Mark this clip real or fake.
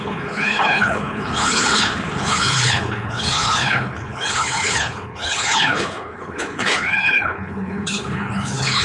fake